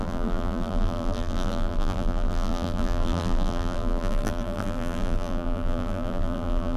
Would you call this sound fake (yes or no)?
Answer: yes